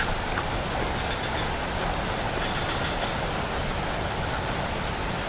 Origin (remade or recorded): recorded